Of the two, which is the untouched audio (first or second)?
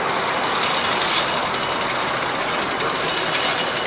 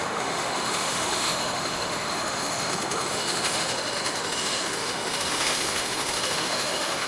first